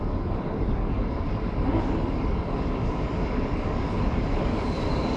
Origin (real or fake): fake